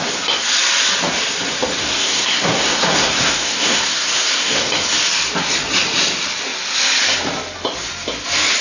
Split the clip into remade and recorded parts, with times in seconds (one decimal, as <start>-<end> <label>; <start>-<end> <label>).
0.0-1.8 recorded; 1.8-4.7 remade; 4.7-8.6 recorded